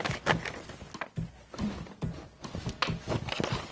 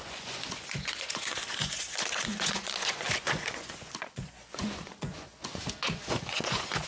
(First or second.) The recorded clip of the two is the first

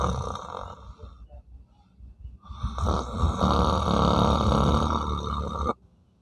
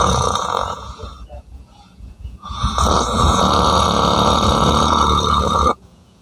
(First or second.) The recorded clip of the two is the first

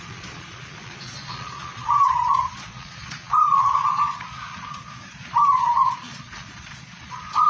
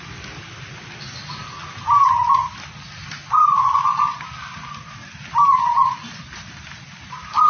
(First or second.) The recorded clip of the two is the second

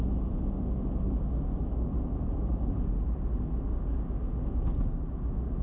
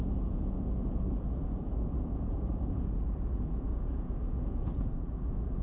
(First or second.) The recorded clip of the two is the first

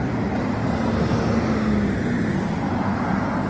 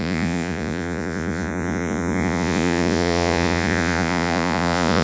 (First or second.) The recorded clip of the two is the first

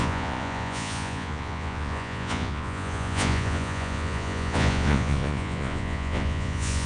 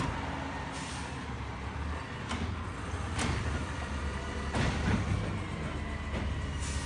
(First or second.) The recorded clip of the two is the second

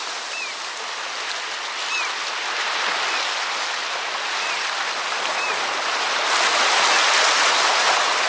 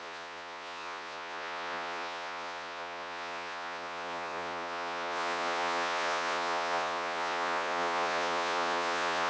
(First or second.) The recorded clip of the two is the first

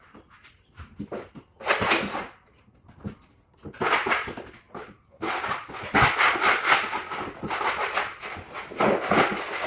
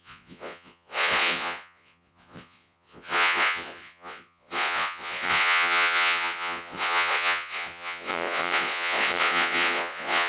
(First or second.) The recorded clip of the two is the first